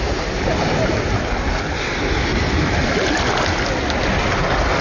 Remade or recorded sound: recorded